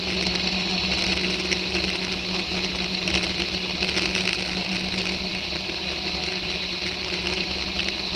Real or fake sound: real